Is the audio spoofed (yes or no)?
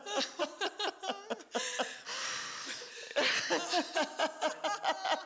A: no